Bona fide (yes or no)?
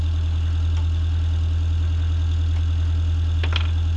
yes